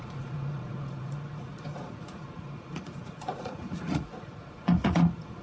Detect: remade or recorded remade